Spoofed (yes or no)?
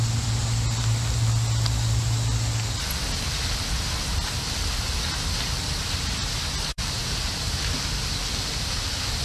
no